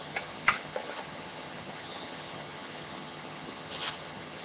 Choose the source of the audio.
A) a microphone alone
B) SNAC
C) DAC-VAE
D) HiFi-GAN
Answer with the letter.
D